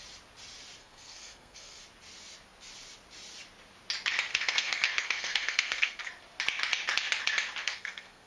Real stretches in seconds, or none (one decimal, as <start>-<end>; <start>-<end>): 0.0-0.8; 1.8-4.3; 6.1-7.6